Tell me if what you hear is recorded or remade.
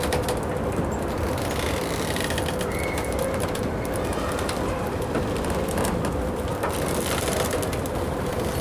remade